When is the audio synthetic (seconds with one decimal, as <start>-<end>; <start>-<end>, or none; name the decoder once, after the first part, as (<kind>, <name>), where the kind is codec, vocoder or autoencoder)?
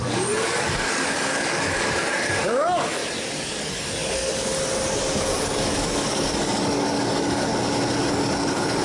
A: 0.0-3.0 (codec, DAC); 3.6-4.5; 5.4-7.5; 8.1-8.8